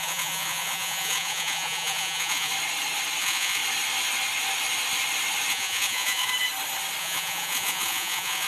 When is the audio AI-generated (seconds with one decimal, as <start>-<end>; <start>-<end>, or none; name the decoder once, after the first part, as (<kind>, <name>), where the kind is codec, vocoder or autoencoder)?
0.0-2.5 (vocoder, Vocos); 3.2-3.6; 5.5-6.3; 7.0-8.5